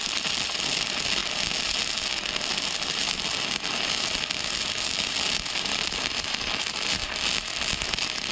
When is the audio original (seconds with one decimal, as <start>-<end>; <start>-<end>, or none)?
0.0-8.3